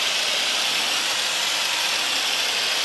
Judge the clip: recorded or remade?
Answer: recorded